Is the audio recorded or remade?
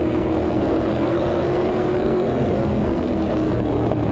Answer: remade